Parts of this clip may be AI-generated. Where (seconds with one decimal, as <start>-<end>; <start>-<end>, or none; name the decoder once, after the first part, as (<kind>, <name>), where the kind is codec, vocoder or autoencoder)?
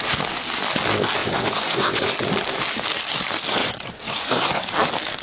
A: 1.2-2.1 (vocoder, Vocos); 3.6-4.6